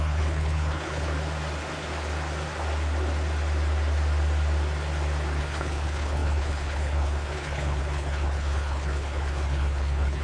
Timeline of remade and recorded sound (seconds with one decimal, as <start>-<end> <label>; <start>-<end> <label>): 0.0-1.1 remade; 1.1-5.4 recorded; 5.4-10.2 remade